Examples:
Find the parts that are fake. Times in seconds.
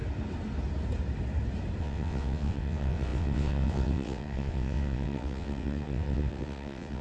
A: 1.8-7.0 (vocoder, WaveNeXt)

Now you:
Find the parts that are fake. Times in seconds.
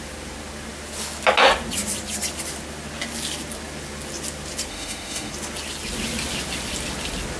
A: 4.7-5.3 (autoencoder, DAC-VAE)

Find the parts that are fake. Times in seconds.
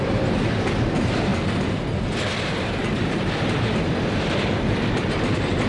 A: none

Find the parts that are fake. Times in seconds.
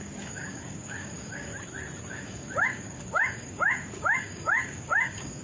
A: 0.0-1.5 (codec, DAC); 2.1-5.4